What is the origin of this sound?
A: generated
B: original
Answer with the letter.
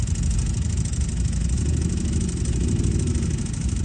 B